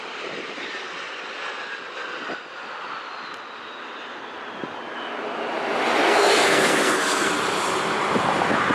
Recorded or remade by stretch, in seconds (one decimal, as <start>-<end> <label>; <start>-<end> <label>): 0.0-6.0 recorded; 6.0-7.3 remade; 7.3-8.7 recorded